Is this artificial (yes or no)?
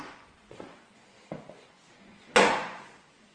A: yes